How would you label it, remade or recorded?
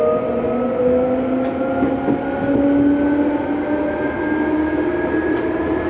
recorded